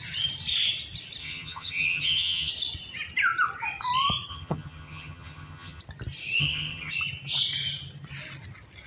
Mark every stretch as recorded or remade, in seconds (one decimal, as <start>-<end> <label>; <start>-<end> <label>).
0.0-1.2 recorded; 1.2-2.5 remade; 2.5-4.3 recorded; 4.3-5.8 remade; 5.8-6.4 recorded; 6.4-6.9 remade; 6.9-8.9 recorded